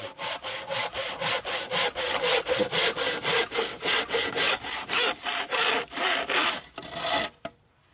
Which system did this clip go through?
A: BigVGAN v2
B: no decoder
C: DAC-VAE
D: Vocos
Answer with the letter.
B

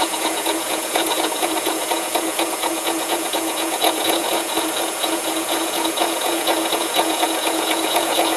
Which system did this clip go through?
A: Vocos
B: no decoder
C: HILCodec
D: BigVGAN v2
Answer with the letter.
A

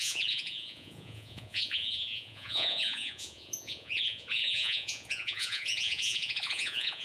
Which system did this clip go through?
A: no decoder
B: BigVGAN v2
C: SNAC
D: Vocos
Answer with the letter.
D